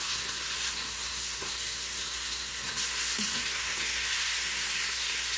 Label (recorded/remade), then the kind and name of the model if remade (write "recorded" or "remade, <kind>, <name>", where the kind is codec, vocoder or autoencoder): remade, codec, SNAC